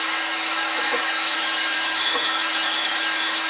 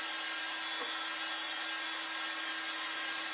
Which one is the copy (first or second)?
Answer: first